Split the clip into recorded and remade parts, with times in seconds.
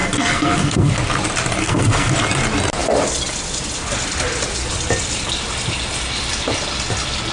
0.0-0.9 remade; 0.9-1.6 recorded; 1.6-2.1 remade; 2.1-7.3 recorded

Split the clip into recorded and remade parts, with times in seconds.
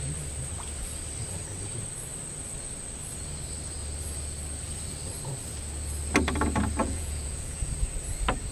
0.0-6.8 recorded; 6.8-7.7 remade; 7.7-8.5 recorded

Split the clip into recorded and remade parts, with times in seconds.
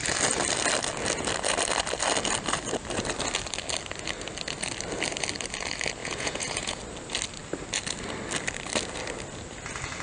0.0-6.0 recorded; 6.0-6.8 remade; 6.8-10.0 recorded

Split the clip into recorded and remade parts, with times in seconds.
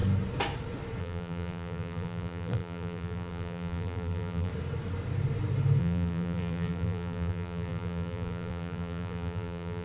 0.0-1.0 recorded; 1.0-4.5 remade; 4.5-5.8 recorded; 5.8-9.8 remade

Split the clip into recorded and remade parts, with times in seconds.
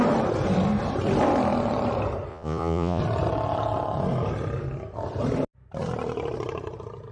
0.0-2.3 recorded; 2.3-3.0 remade; 3.0-7.1 recorded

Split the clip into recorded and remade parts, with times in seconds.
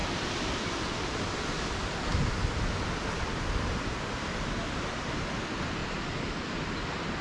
0.0-7.2 recorded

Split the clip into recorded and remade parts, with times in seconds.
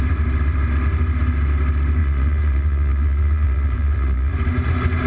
0.0-2.0 recorded; 2.0-4.3 remade; 4.3-5.1 recorded